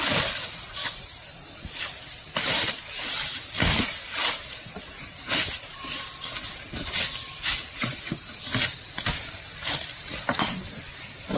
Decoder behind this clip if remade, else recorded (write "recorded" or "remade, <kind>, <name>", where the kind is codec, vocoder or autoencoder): recorded